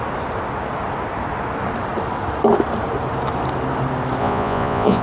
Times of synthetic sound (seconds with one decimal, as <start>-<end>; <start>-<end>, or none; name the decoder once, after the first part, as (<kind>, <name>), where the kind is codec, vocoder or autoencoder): 4.2-5.0 (vocoder, Vocos)